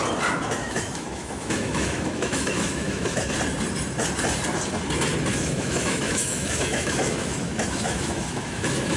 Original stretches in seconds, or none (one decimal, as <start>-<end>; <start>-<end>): 0.0-0.6; 3.3-5.3